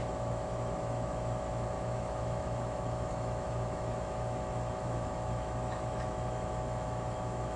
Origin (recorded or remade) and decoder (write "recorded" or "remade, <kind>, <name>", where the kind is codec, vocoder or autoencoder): remade, autoencoder, DAC-VAE